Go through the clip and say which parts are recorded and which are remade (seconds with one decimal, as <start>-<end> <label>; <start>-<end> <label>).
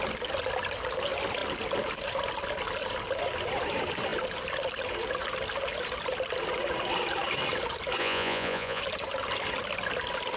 0.0-8.0 recorded; 8.0-8.8 remade; 8.8-10.4 recorded